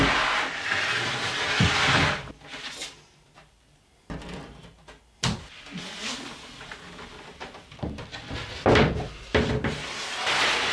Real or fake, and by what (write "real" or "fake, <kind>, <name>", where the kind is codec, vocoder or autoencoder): real